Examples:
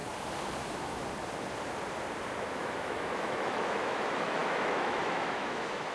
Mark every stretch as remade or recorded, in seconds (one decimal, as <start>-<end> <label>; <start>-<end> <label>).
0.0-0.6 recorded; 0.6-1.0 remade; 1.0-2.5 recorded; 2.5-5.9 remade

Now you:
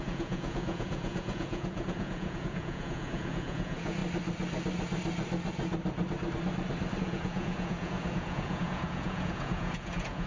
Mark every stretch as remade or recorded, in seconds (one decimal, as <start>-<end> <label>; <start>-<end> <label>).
0.0-4.0 remade; 4.0-7.0 recorded; 7.0-10.3 remade

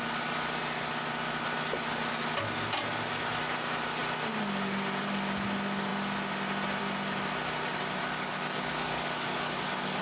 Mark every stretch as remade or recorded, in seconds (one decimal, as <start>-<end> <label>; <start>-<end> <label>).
0.0-8.0 recorded; 8.0-10.0 remade

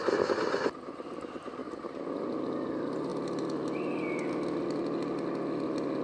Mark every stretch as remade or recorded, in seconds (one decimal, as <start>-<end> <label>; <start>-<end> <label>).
0.0-6.0 recorded

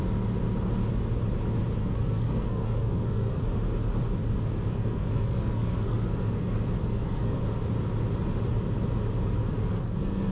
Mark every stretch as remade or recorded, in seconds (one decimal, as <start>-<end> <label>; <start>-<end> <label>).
0.0-1.8 recorded; 1.8-3.4 remade; 3.4-4.2 recorded; 4.2-7.4 remade; 7.4-9.4 recorded; 9.4-10.3 remade